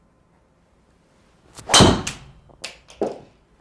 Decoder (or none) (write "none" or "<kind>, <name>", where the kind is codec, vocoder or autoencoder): none